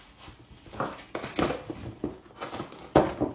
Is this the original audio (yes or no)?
yes